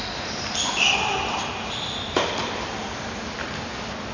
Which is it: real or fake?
fake